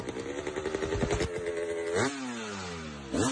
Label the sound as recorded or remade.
recorded